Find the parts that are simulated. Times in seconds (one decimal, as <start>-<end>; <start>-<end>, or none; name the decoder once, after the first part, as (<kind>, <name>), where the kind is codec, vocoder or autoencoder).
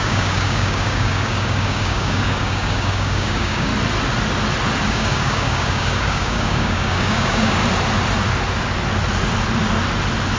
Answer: 0.0-3.7 (codec, DAC); 4.9-7.6